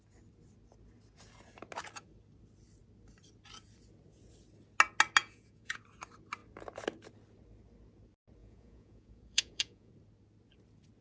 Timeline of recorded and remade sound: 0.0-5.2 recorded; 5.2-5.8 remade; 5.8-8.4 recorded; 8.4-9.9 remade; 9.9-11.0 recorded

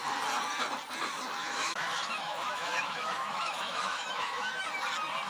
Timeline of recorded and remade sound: 0.0-1.4 recorded; 1.4-4.6 remade; 4.6-5.3 recorded

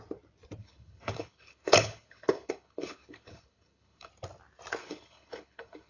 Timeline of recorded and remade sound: 0.0-0.6 recorded; 0.6-4.1 remade; 4.1-4.8 recorded; 4.8-5.9 remade

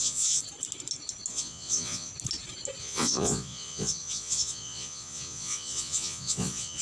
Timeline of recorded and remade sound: 0.0-0.4 remade; 0.4-1.3 recorded; 1.3-2.1 remade; 2.1-2.8 recorded; 2.8-6.8 remade